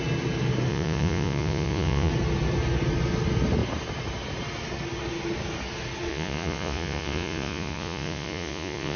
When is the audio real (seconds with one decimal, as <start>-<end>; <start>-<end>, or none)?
0.0-0.7; 2.1-6.1